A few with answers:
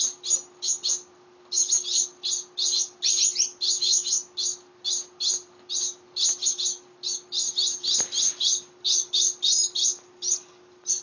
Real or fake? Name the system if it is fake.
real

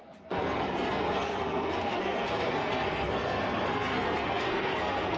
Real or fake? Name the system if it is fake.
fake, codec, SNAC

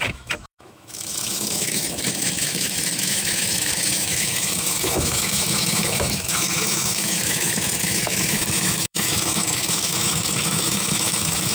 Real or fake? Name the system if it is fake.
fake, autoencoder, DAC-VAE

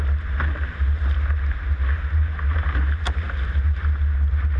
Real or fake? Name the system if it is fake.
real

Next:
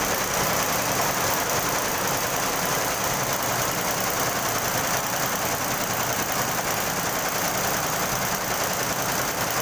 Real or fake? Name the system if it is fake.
real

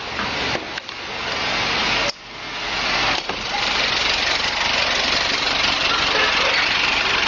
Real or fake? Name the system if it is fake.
real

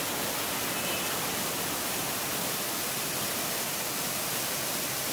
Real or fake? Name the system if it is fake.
real